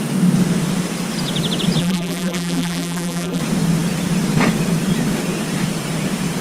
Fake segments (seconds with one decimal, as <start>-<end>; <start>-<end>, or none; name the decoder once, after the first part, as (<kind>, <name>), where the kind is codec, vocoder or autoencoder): 1.8-3.4 (vocoder, BigVGAN v2)